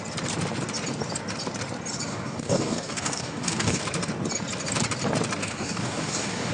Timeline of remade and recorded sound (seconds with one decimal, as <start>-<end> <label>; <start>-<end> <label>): 0.0-2.1 recorded; 2.1-3.8 remade; 3.8-5.4 recorded; 5.4-6.5 remade